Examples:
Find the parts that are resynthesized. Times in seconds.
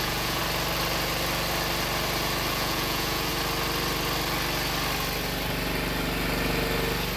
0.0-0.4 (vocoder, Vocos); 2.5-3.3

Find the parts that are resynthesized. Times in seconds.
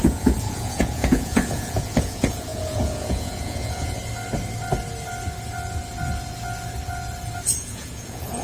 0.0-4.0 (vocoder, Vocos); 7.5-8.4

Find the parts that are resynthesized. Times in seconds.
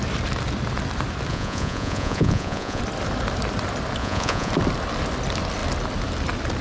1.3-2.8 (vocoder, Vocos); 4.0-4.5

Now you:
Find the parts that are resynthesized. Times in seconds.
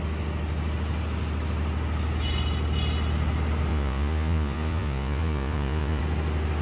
3.7-6.0 (vocoder, Vocos)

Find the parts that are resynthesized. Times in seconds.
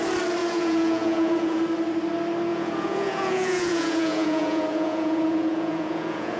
0.4-1.6 (vocoder, Vocos); 2.5-6.4